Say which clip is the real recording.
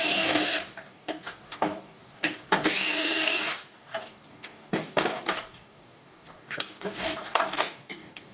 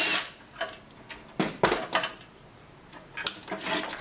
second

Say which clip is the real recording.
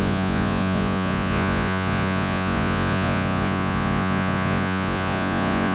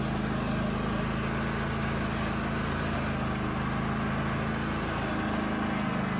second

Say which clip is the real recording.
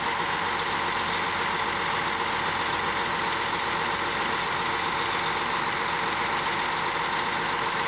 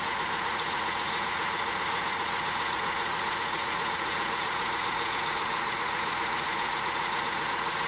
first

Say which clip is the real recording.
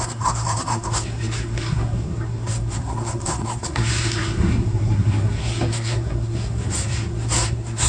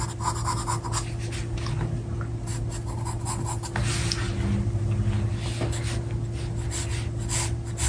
second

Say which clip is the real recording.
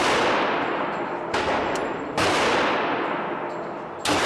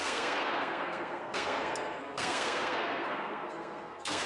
first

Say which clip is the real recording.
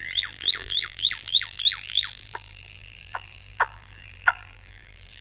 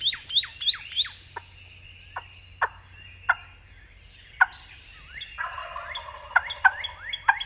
second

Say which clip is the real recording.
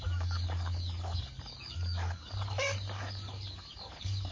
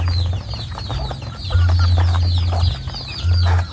second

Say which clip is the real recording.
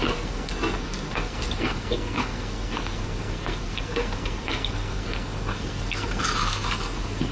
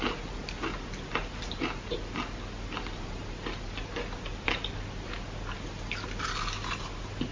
second